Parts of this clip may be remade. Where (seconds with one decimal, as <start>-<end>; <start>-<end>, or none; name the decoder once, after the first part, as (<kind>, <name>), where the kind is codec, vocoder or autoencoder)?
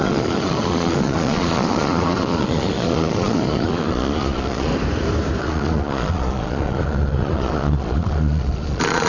0.0-4.7 (vocoder, Vocos); 5.4-9.1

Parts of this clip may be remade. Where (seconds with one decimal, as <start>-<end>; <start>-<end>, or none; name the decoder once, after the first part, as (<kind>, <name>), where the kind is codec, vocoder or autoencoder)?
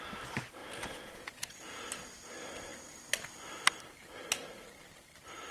0.6-1.9 (vocoder, Vocos)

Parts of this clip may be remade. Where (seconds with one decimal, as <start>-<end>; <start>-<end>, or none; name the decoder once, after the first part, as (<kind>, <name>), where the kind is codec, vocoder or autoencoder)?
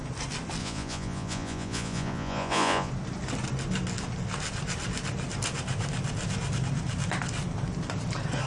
0.6-2.9 (vocoder, Vocos)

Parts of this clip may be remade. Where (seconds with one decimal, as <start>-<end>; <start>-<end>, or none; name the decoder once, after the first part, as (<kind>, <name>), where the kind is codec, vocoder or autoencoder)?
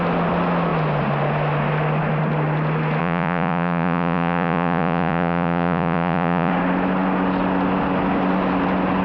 3.0-6.5 (vocoder, Vocos)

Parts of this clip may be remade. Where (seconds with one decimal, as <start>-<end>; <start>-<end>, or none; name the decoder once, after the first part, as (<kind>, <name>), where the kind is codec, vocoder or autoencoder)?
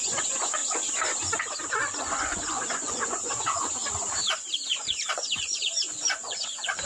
0.0-0.6 (vocoder, Vocos); 1.7-3.8; 4.5-6.9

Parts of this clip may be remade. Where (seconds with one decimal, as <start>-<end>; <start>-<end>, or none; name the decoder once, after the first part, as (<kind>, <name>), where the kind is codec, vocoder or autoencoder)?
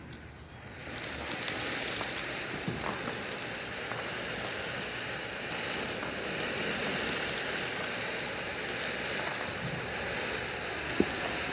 none